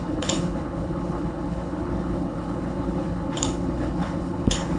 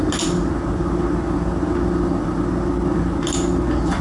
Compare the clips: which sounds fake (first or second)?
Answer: first